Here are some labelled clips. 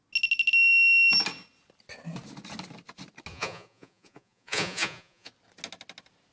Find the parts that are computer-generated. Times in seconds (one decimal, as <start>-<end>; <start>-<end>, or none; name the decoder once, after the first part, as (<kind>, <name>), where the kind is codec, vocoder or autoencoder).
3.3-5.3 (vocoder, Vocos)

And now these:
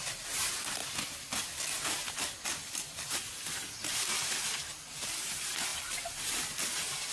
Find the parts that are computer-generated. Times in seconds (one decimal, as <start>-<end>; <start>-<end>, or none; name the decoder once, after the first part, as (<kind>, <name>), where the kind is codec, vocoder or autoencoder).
0.8-1.6 (vocoder, BigVGAN v2)

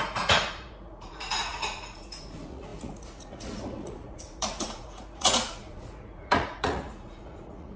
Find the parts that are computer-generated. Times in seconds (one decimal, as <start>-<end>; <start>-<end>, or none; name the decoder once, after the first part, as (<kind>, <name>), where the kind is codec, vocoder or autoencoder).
0.0-7.8 (vocoder, Vocos)

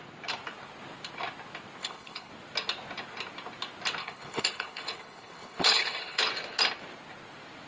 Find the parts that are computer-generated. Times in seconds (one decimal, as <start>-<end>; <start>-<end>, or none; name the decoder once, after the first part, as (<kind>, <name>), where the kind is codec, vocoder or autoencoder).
1.8-2.3 (codec, HILCodec); 4.0-6.2

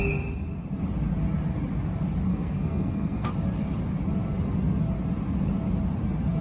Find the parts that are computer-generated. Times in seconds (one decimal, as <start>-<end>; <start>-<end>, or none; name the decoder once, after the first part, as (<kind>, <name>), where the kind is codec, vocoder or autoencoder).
2.3-3.3 (codec, SNAC)

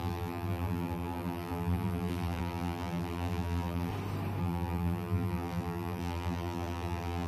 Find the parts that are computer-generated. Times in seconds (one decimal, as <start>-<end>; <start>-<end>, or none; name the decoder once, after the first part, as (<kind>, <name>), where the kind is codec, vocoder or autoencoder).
0.0-3.9 (vocoder, BigVGAN v2); 4.4-7.3